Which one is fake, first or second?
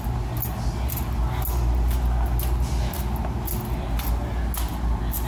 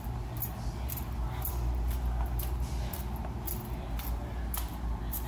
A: second